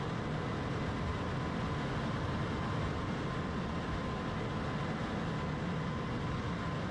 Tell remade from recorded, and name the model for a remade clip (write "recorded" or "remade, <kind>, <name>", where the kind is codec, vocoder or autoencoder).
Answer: recorded